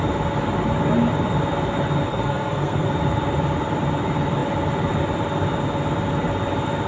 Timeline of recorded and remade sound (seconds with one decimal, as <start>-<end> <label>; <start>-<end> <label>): 0.0-2.1 recorded; 2.1-2.9 remade; 2.9-6.9 recorded